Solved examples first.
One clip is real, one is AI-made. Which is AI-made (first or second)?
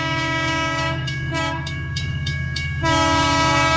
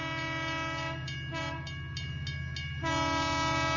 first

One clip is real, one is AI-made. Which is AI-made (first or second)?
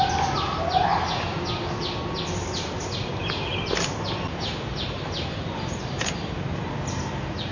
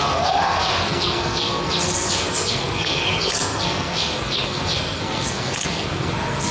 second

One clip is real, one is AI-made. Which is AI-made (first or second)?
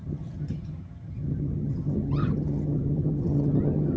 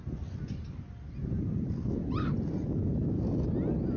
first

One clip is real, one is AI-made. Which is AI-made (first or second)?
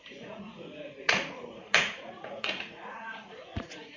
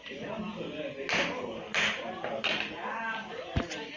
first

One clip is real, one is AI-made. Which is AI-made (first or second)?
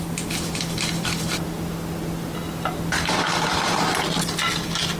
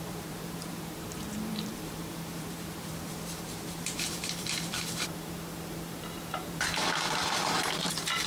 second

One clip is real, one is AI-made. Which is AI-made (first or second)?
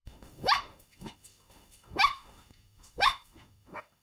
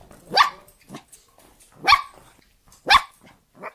first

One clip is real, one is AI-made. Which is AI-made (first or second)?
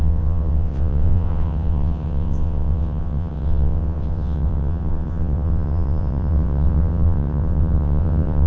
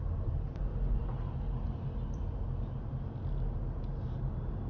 first